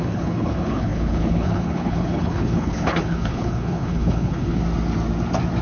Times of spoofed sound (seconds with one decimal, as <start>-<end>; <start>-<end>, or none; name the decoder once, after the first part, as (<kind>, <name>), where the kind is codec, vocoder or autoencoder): 0.0-4.6 (codec, HILCodec)